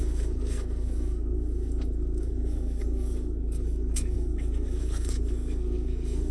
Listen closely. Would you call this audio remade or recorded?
remade